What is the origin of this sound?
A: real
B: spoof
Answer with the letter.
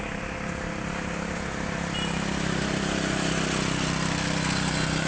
A